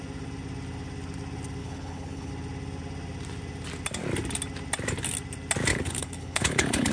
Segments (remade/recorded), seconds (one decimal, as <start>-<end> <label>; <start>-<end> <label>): 0.0-1.6 recorded; 1.6-2.3 remade; 2.3-5.7 recorded; 5.7-6.9 remade